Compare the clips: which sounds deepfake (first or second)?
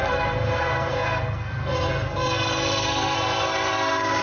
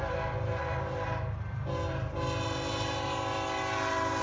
first